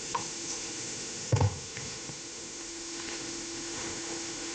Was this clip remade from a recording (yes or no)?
yes